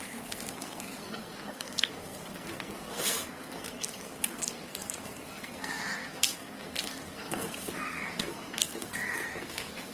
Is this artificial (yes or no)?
yes